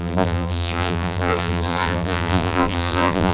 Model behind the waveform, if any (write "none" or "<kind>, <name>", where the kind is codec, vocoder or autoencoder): vocoder, BigVGAN v2